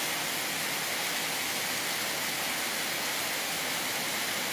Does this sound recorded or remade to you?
recorded